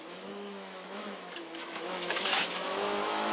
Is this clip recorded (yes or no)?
no